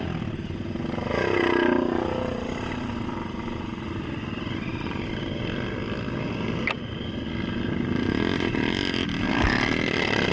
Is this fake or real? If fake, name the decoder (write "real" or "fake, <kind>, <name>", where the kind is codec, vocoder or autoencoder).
real